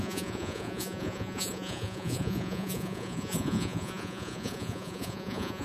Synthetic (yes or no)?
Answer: yes